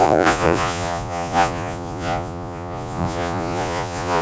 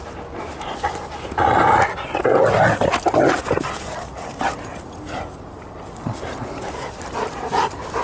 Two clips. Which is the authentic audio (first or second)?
second